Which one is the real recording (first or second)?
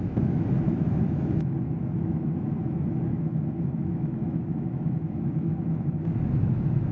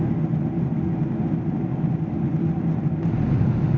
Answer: second